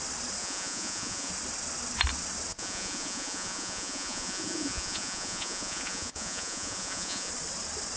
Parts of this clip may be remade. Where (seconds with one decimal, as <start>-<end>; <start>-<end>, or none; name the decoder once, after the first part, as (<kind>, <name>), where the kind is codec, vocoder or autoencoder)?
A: 0.4-1.3 (vocoder, Vocos); 2.5-7.3